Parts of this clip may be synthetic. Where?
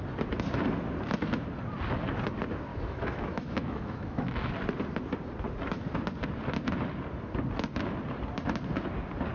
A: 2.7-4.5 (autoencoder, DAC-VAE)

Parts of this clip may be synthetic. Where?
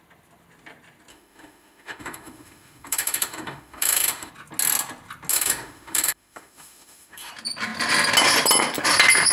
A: 1.1-4.3 (autoencoder, DAC-VAE); 5.3-7.3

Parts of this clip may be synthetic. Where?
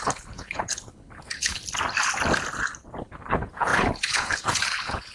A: 0.0-1.6 (codec, HILCodec); 3.0-5.1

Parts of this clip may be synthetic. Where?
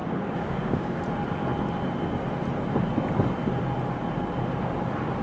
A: 0.0-1.0 (codec, DAC)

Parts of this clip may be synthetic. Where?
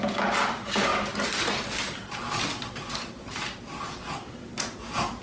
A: none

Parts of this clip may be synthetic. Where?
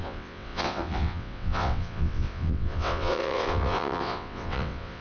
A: 0.0-5.0 (vocoder, WaveNeXt)